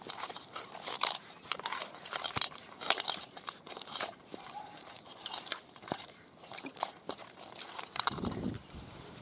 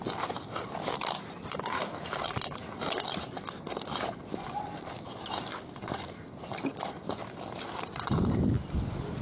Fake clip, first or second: first